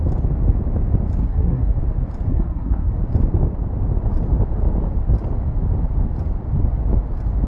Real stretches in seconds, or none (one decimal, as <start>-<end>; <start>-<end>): 0.0-1.2; 1.8-2.3; 2.9-7.5